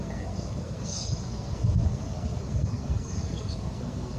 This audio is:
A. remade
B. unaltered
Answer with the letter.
A